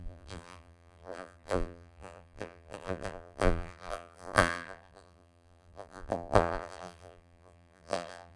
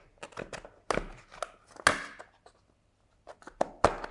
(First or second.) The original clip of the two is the second